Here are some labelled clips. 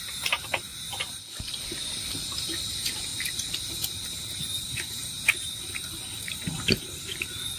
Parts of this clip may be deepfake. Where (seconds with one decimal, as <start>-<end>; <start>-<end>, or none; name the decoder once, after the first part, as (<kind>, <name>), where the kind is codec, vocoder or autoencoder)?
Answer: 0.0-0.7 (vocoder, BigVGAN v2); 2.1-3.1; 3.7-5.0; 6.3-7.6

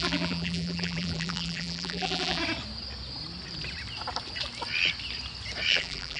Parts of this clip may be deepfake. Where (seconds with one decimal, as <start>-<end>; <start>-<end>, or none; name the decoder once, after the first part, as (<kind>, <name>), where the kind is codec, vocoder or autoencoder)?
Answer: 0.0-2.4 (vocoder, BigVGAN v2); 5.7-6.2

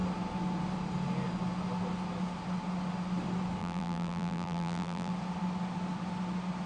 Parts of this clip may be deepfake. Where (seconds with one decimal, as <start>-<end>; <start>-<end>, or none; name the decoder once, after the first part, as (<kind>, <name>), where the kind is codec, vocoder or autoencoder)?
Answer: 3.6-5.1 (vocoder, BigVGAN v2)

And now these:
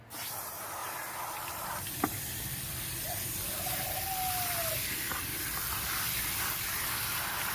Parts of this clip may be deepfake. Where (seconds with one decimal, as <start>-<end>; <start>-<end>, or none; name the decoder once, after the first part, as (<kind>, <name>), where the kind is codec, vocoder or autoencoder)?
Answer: 0.8-3.3 (vocoder, BigVGAN v2); 5.3-6.4

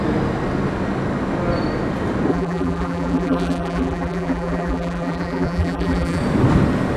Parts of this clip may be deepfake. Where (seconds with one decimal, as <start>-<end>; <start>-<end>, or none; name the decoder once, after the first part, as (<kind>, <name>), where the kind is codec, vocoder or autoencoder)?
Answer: 2.3-6.2 (vocoder, BigVGAN v2)

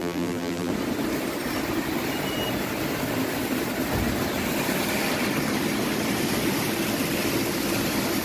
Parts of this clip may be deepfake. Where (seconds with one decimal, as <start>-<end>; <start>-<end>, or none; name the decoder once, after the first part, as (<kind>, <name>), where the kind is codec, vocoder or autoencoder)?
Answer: 0.0-0.7 (vocoder, BigVGAN v2)

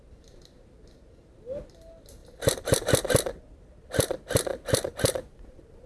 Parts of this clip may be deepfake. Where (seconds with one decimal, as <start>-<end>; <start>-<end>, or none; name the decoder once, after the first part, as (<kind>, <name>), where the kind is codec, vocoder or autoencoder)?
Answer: 4.5-5.9 (vocoder, BigVGAN v2)